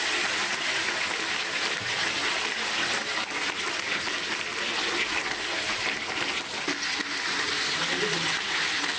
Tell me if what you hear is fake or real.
real